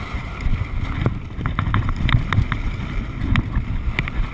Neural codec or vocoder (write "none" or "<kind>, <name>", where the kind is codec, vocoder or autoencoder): vocoder, BigVGAN v2